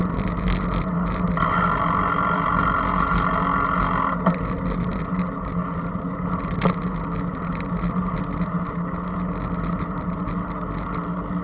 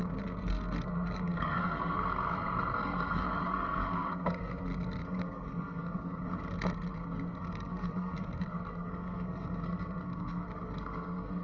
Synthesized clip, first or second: second